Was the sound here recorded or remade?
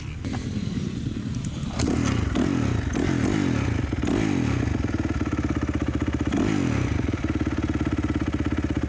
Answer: recorded